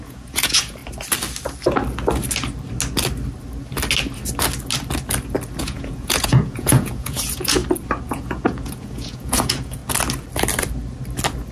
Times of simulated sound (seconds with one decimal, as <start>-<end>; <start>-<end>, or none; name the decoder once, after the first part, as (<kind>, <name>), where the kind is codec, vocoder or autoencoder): 0.0-0.8 (vocoder, Vocos); 5.6-7.6; 8.1-9.8